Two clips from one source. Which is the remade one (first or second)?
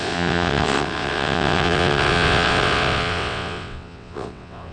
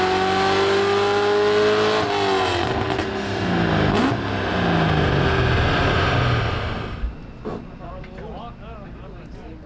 first